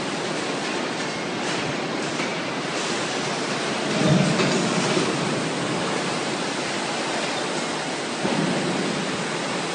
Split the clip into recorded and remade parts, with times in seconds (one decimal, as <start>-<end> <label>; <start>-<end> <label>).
0.0-2.3 recorded; 2.3-3.1 remade; 3.1-9.7 recorded